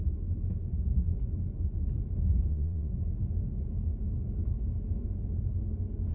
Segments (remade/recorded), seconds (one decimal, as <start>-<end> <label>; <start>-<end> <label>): 0.0-2.5 recorded; 2.5-2.9 remade; 2.9-6.1 recorded